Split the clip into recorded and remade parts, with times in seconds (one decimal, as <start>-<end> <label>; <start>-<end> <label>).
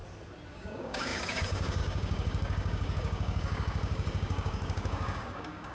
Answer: 0.0-0.5 recorded; 0.5-5.7 remade